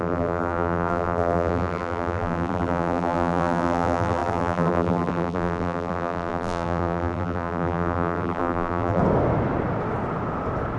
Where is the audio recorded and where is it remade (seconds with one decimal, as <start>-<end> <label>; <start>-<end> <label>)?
0.0-9.0 remade; 9.0-10.8 recorded